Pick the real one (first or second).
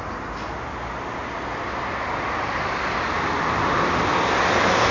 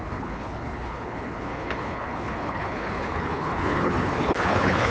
first